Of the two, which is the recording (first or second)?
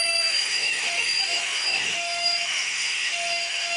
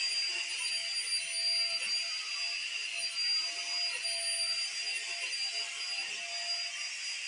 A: second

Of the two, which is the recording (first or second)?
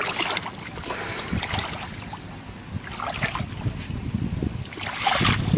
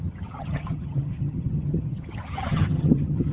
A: first